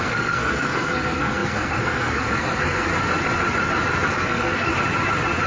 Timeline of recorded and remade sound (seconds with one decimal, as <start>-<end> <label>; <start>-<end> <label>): 0.0-2.9 remade; 2.9-4.1 recorded; 4.1-4.7 remade; 4.7-5.5 recorded